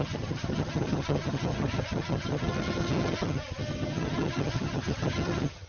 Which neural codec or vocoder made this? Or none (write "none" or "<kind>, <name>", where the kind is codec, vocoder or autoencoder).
vocoder, HiFi-GAN